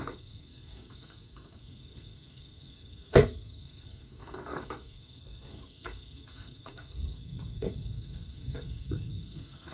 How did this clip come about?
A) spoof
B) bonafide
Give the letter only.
A